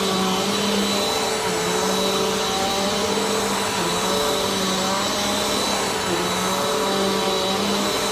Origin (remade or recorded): recorded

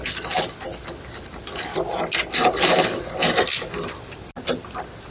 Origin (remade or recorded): recorded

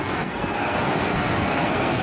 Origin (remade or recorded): remade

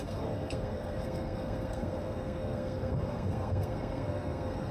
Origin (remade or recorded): remade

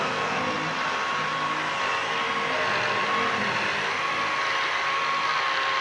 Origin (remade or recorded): recorded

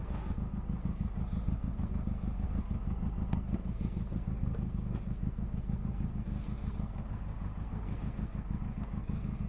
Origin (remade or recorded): remade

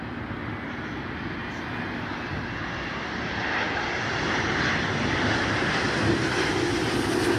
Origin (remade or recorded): recorded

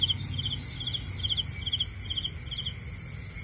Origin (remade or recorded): recorded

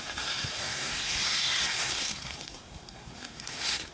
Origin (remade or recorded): remade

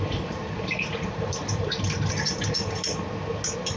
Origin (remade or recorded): recorded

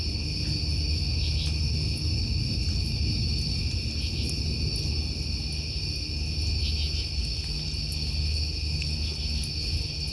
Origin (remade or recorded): recorded